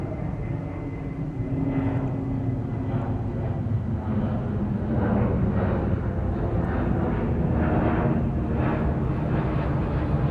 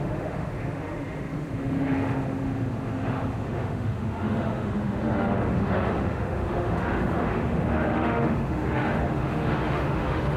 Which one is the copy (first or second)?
second